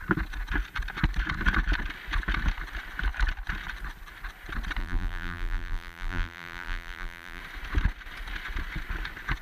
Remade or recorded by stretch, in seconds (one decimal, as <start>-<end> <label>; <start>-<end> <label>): 0.0-4.8 recorded; 4.8-7.4 remade; 7.4-9.4 recorded